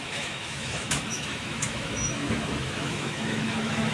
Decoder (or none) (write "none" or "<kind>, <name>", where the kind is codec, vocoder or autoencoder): autoencoder, DAC-VAE